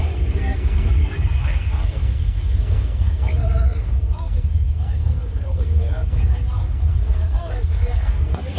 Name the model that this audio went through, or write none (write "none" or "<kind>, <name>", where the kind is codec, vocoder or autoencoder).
codec, SNAC